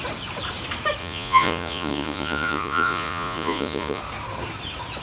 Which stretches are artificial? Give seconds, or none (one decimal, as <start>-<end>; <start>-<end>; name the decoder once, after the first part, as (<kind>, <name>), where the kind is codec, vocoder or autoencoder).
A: 1.0-4.0 (vocoder, Vocos)